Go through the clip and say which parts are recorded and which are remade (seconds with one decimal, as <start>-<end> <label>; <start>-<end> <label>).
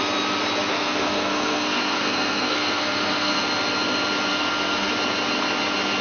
0.0-0.7 recorded; 0.7-3.4 remade; 3.4-4.3 recorded; 4.3-4.9 remade; 4.9-6.0 recorded